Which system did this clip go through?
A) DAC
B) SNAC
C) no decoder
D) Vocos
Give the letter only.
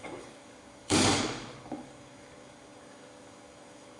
A